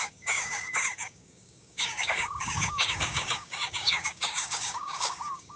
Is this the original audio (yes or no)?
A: no